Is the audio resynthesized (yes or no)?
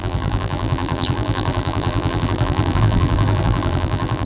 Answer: yes